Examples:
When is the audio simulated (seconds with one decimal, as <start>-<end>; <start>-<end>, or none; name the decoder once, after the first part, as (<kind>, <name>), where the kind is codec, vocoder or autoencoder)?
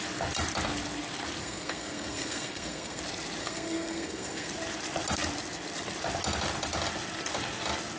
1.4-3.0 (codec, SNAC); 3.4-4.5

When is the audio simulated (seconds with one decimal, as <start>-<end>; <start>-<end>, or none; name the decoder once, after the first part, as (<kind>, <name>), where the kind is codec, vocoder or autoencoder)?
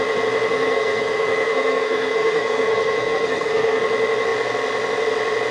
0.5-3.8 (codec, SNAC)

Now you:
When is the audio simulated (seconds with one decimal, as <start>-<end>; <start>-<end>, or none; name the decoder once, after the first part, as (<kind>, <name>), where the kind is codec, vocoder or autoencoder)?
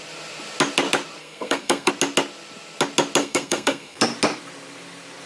1.2-1.9 (codec, SNAC); 3.2-4.0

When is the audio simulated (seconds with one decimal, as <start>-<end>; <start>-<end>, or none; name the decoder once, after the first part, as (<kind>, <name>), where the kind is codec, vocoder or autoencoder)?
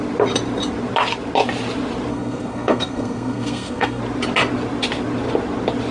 2.1-4.0 (codec, SNAC)